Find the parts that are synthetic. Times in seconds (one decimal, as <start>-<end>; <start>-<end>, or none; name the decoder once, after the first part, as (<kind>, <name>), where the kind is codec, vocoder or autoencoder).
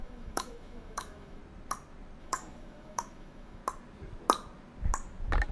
0.0-1.4 (autoencoder, DAC-VAE); 2.2-3.6